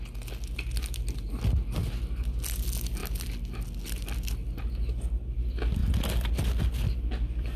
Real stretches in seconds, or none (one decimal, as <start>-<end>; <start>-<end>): 0.0-7.6